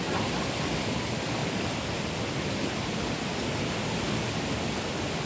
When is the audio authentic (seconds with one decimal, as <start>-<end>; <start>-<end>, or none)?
0.0-5.3